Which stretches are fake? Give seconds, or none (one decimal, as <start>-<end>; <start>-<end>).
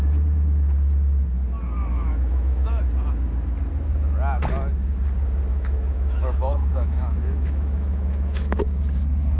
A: 1.9-2.8; 5.5-8.8